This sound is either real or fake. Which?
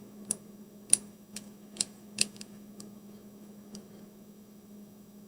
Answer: fake